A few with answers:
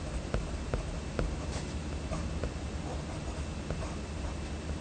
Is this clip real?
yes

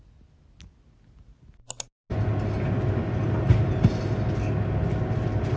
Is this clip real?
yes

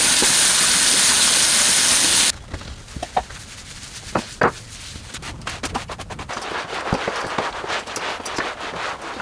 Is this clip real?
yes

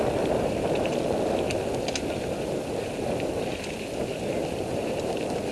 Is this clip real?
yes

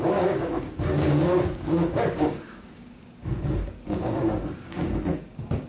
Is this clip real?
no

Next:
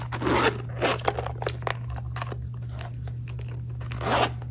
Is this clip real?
yes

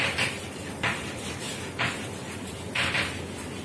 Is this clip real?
no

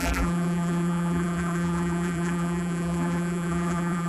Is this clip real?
no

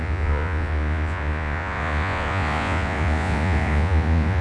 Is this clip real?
no